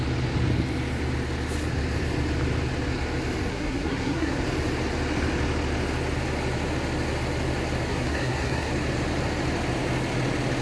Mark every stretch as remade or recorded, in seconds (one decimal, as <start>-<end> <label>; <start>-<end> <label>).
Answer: 0.0-3.5 recorded; 3.5-4.4 remade; 4.4-7.9 recorded; 7.9-8.7 remade; 8.7-10.6 recorded